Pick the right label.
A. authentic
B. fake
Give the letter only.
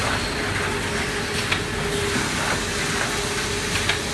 A